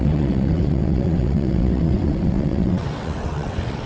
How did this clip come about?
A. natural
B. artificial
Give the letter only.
B